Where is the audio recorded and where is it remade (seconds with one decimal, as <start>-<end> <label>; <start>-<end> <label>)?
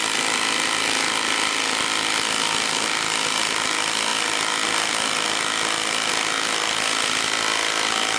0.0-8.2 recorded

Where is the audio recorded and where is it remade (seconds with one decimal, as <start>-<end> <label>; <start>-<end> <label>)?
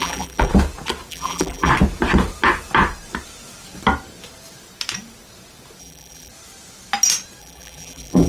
0.0-0.5 remade; 0.5-1.1 recorded; 1.1-1.7 remade; 1.7-5.8 recorded; 5.8-6.3 remade; 6.3-7.4 recorded; 7.4-8.3 remade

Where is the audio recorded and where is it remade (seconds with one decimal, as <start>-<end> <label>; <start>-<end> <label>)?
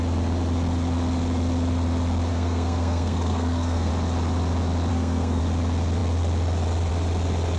0.0-2.3 recorded; 2.3-3.9 remade; 3.9-4.9 recorded; 4.9-5.4 remade; 5.4-7.6 recorded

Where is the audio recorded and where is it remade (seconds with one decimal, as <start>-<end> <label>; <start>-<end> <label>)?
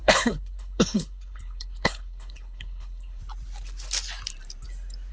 0.0-3.2 remade; 3.2-5.1 recorded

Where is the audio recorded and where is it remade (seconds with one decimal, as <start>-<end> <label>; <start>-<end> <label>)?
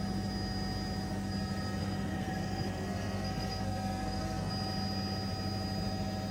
0.0-1.8 recorded; 1.8-4.5 remade; 4.5-6.3 recorded